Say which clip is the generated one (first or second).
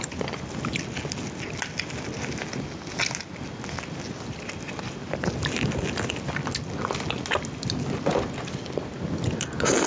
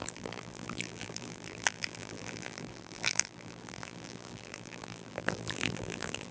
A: second